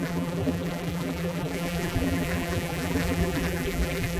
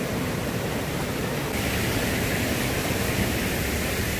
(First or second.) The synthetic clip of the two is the first